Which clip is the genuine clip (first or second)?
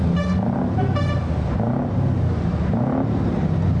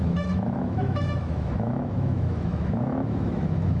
first